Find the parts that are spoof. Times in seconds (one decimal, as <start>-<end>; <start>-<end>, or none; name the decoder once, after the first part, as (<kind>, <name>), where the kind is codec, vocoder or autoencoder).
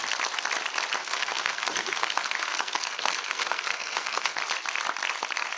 1.0-4.4 (codec, SNAC)